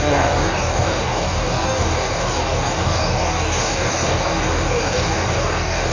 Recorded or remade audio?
remade